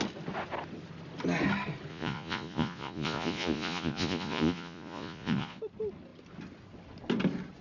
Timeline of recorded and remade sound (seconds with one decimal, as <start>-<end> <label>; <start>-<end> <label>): 0.0-1.9 recorded; 1.9-5.6 remade; 5.6-7.6 recorded